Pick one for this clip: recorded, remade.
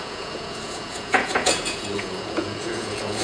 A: remade